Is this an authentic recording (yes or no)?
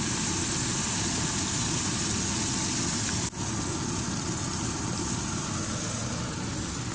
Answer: yes